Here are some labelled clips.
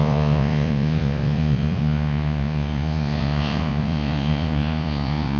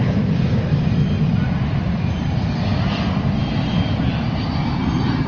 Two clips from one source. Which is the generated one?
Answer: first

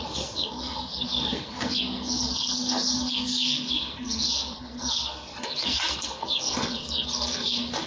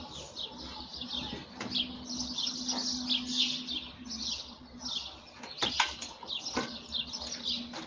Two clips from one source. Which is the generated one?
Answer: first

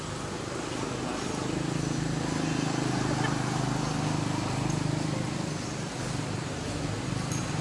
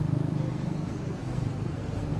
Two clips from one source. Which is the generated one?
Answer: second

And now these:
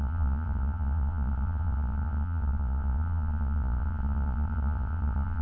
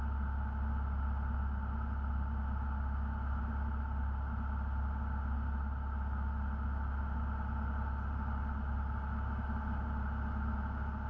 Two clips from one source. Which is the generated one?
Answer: first